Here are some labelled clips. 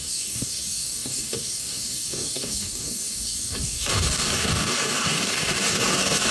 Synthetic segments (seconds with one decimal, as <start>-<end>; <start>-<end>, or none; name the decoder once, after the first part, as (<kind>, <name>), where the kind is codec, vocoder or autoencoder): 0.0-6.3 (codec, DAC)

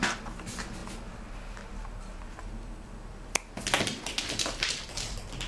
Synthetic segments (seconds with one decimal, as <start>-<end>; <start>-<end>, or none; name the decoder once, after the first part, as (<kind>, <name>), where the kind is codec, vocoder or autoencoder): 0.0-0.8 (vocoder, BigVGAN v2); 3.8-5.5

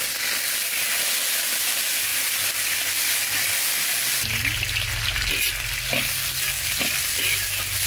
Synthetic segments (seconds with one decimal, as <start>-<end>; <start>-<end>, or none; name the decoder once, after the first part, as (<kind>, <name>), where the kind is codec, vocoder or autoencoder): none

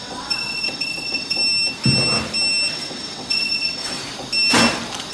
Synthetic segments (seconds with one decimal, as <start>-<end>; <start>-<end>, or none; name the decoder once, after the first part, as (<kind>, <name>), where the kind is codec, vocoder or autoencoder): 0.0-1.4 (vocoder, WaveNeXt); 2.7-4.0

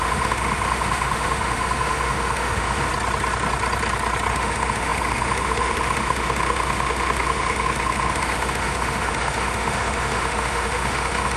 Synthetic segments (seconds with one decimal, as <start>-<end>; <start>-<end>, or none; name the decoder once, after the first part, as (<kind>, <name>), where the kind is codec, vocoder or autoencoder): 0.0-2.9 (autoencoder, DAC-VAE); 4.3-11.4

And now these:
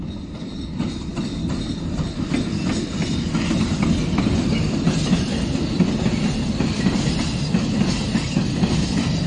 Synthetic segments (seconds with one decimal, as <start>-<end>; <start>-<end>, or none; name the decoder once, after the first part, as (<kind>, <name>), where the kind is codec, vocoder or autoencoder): none